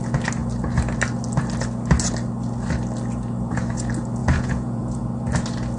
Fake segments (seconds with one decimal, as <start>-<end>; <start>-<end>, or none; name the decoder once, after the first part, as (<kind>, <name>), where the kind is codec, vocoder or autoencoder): 4.2-5.0 (vocoder, Vocos)